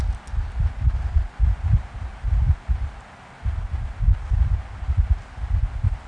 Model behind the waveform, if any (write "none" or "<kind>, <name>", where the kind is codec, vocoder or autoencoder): none